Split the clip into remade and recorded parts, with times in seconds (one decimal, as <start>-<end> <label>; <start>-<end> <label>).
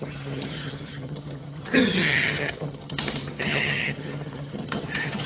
0.0-5.3 remade